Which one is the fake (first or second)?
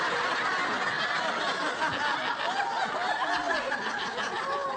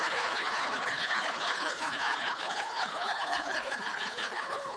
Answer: second